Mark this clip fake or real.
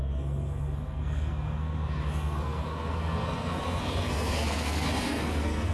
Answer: fake